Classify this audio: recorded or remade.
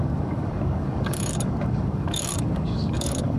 remade